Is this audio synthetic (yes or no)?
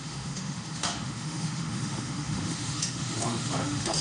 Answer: yes